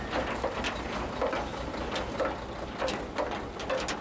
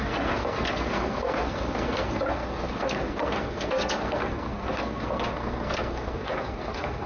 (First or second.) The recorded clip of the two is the first